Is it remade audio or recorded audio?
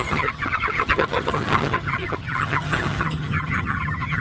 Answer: remade